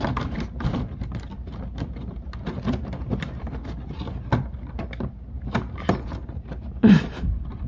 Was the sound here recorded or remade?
recorded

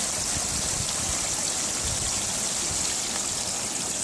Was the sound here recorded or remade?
recorded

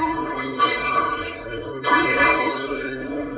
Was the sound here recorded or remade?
remade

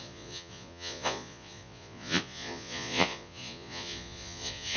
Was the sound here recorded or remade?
remade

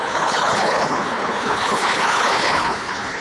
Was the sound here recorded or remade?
remade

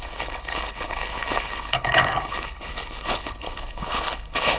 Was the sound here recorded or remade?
remade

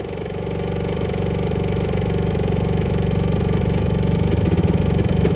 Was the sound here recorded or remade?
remade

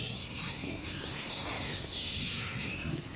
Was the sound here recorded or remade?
remade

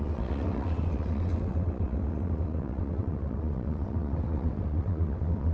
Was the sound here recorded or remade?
remade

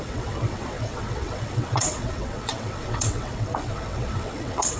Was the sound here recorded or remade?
remade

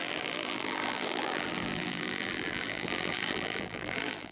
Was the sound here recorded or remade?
remade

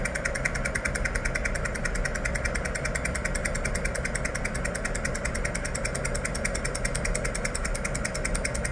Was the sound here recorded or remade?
recorded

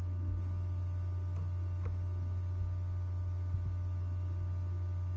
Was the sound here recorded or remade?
recorded